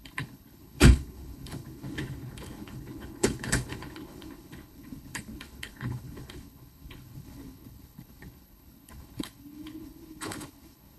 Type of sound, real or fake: fake